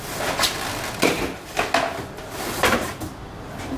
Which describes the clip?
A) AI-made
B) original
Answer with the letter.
B